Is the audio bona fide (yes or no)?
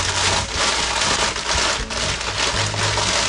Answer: yes